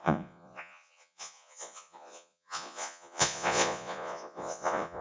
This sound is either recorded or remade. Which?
remade